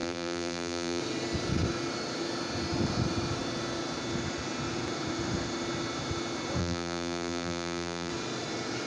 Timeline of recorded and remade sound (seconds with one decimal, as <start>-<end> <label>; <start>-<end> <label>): 0.0-1.0 remade; 1.0-6.6 recorded; 6.6-8.1 remade; 8.1-8.9 recorded